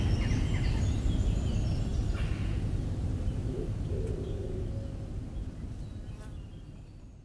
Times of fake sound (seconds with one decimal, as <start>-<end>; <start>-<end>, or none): none